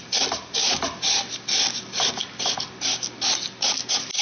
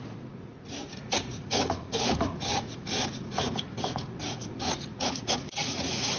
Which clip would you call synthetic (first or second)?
second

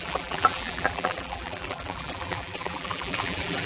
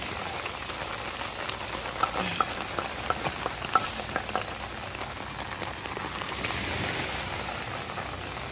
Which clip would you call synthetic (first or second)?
first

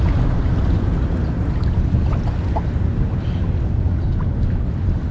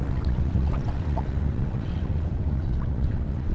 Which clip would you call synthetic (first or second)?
second